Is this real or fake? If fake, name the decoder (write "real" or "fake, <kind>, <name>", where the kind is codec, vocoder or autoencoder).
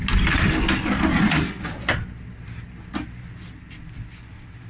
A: real